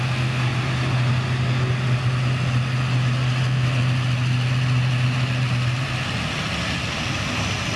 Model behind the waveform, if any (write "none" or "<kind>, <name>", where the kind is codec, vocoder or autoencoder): none